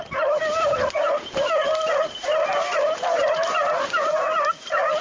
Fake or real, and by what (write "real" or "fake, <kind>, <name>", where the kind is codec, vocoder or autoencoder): real